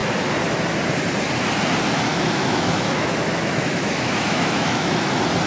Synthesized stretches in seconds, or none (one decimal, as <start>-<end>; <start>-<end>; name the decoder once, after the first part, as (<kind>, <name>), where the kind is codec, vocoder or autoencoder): 2.1-5.1 (autoencoder, DAC-VAE)